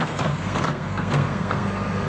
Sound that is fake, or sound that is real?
fake